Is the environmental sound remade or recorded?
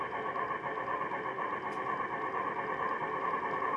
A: recorded